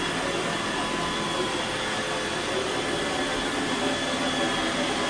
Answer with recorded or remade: recorded